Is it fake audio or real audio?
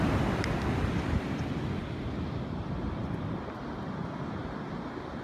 real